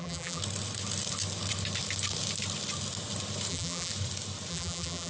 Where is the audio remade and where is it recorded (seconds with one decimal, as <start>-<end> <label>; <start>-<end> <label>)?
0.0-0.4 remade; 0.4-3.5 recorded; 3.5-3.9 remade; 3.9-4.5 recorded; 4.5-5.1 remade